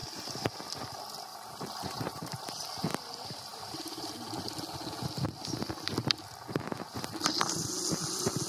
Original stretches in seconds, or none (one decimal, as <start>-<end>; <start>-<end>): 0.6-1.3; 2.4-3.5; 4.1-8.5

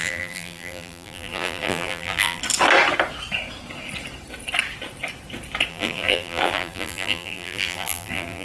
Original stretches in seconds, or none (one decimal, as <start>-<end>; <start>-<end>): 2.4-5.7

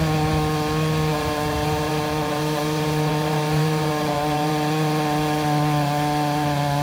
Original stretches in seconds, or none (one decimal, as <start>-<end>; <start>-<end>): 0.0-1.1; 4.5-6.8

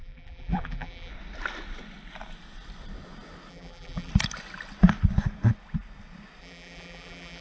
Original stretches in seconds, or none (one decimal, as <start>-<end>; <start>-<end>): 1.1-3.5; 4.1-6.4

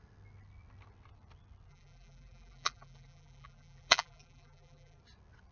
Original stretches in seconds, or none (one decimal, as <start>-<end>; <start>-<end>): 0.0-1.7; 5.0-5.5

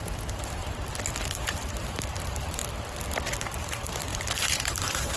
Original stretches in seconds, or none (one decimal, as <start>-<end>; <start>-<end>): 0.6-1.2; 2.6-3.6

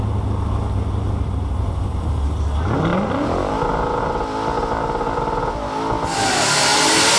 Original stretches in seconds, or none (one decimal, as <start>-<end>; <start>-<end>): 0.0-7.2

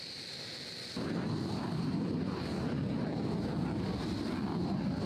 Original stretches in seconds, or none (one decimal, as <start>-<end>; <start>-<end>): 0.0-5.1